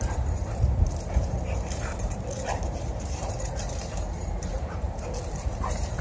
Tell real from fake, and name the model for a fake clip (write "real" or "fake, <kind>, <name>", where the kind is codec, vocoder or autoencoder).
fake, vocoder, BigVGAN v2